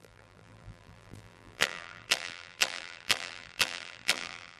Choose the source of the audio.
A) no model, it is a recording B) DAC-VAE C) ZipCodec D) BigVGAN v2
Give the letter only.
D